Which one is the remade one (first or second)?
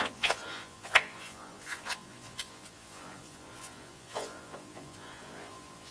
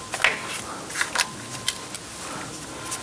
first